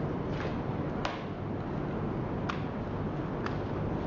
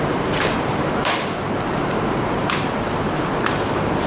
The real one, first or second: first